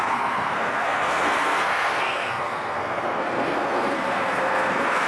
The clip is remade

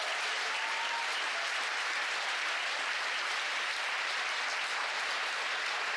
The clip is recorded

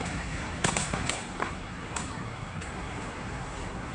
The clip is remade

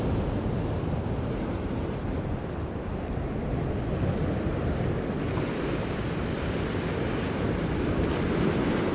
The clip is recorded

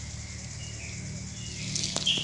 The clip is recorded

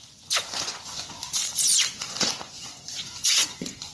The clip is remade